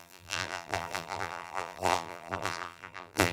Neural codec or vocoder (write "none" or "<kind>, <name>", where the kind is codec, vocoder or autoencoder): vocoder, BigVGAN v2